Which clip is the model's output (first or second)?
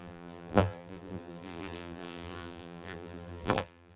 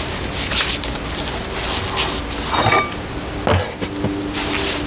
first